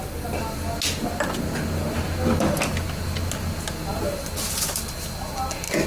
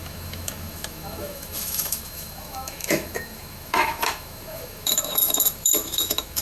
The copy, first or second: second